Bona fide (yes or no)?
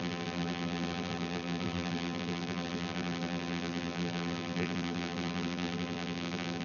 no